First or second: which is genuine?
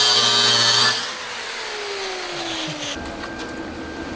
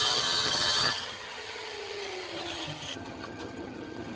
first